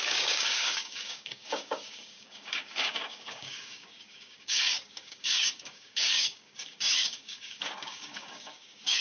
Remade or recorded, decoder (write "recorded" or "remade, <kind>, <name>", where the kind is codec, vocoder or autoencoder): remade, codec, DAC